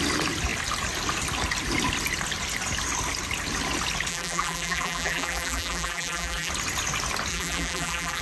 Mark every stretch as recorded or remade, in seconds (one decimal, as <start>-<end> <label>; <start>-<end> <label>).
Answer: 0.0-4.1 recorded; 4.1-6.5 remade; 6.5-7.3 recorded; 7.3-8.2 remade